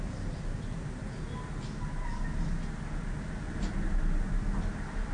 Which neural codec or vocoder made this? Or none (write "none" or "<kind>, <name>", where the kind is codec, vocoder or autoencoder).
none